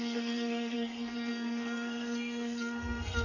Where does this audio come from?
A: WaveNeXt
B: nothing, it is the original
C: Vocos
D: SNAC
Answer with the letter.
D